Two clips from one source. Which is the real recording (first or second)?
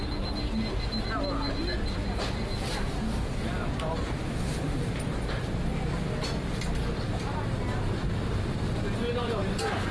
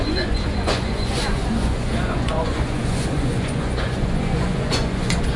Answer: first